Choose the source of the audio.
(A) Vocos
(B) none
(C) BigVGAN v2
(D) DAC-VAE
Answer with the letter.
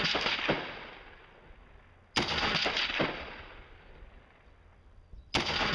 B